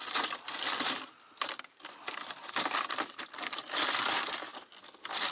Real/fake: real